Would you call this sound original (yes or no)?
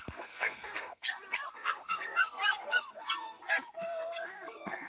no